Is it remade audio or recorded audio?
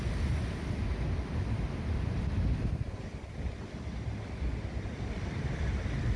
recorded